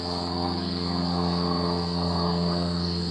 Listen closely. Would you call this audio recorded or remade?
remade